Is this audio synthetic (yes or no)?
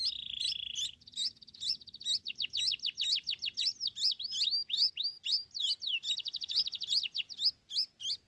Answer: no